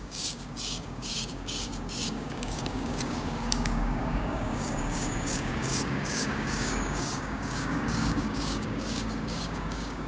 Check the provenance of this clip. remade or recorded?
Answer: remade